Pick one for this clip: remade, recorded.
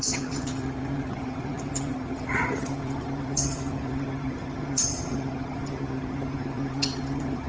remade